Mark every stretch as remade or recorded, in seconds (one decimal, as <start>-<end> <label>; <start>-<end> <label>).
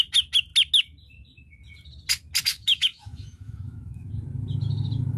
0.0-2.5 recorded; 2.5-4.1 remade; 4.1-5.2 recorded